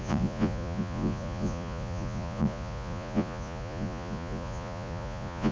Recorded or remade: remade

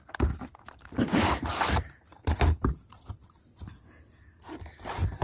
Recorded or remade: recorded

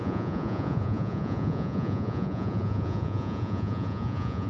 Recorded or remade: remade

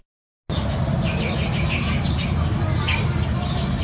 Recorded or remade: recorded